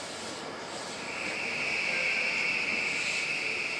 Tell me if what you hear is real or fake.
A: real